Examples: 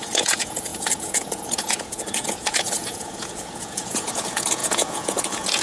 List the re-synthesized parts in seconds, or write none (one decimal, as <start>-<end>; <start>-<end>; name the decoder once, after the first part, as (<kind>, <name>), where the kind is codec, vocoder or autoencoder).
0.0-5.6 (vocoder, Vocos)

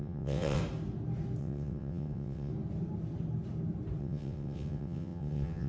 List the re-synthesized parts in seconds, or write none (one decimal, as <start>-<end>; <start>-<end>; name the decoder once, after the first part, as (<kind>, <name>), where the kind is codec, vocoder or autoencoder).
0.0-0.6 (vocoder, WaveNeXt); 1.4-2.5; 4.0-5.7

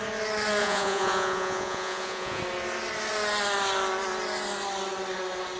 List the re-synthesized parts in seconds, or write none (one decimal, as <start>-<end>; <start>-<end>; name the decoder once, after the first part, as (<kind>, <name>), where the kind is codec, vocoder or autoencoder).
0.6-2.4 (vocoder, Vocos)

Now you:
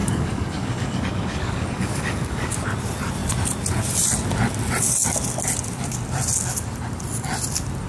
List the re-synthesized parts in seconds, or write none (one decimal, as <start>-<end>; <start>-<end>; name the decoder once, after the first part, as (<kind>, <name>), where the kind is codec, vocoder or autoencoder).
0.0-2.5 (codec, DAC)

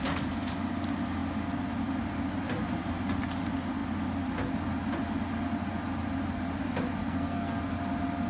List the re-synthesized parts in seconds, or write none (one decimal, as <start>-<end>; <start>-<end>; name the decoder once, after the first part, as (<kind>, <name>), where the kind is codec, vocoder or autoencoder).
7.0-7.6 (codec, SNAC)

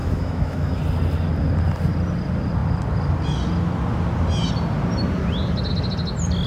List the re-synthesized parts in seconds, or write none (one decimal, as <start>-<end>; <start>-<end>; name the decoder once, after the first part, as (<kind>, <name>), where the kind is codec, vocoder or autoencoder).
0.0-0.8 (autoencoder, DAC-VAE)